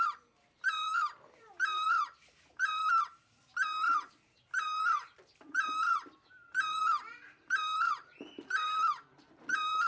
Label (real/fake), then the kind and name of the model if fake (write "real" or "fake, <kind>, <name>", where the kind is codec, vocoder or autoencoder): fake, vocoder, BigVGAN v2